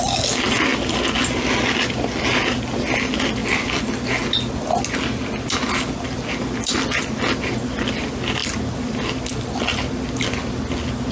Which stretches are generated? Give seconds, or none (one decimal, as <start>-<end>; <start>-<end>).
none